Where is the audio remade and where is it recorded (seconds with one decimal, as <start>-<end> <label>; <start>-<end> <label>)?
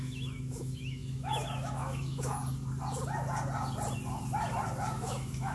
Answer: 0.0-2.4 remade; 2.4-4.8 recorded; 4.8-5.5 remade